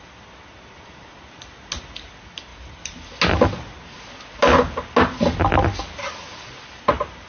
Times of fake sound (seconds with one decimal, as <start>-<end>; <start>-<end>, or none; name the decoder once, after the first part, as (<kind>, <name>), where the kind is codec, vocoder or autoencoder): none